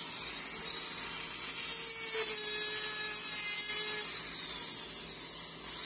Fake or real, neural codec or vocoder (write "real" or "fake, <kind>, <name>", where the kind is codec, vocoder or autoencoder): real